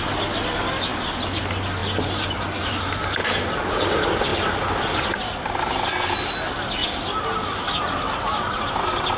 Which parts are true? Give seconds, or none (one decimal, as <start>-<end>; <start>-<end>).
0.0-9.2